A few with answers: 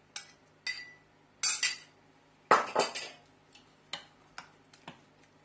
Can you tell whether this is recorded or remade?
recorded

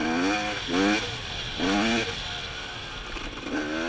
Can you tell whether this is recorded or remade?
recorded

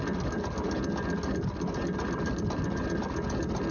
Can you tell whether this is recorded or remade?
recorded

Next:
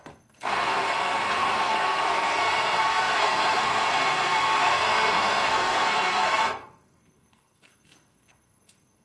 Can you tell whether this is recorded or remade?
remade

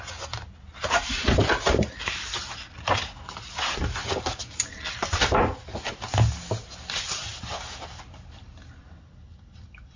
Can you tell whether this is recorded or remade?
recorded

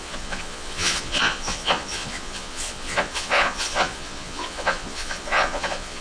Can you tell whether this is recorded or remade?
remade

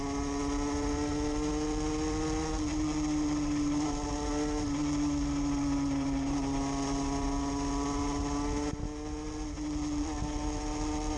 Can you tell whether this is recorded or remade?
recorded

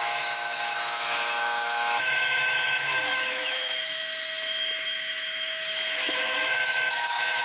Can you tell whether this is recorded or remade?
remade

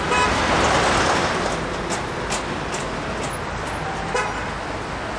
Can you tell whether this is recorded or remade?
recorded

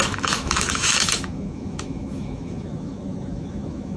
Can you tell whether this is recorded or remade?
remade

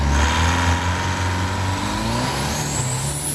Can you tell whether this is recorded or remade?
recorded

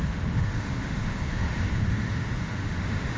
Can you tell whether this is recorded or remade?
remade